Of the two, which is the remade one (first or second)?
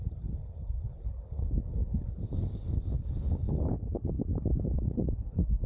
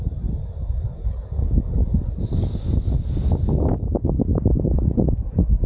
first